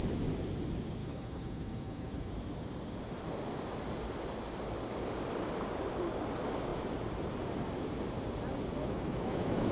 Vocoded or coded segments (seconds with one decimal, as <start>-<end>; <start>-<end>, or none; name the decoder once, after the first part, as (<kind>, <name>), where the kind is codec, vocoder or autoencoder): 1.0-2.3 (autoencoder, DAC-VAE); 8.8-9.7